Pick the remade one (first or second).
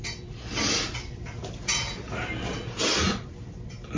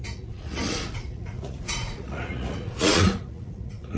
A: second